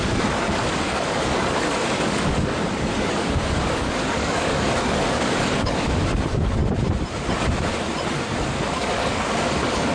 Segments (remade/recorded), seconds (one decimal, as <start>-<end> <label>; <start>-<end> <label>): 0.0-6.6 remade; 6.6-8.4 recorded; 8.4-9.9 remade